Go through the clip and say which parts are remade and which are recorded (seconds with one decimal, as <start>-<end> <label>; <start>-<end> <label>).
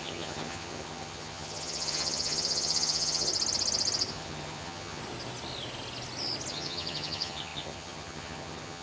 0.0-3.3 remade; 3.3-4.1 recorded; 4.1-5.0 remade; 5.0-6.5 recorded; 6.5-8.8 remade